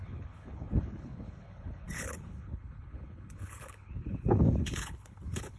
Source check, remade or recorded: remade